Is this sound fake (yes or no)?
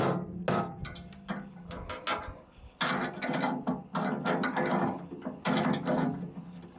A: no